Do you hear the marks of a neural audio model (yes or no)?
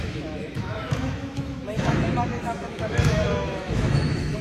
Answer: yes